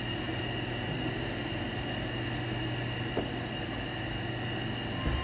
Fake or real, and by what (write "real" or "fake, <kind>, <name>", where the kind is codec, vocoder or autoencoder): real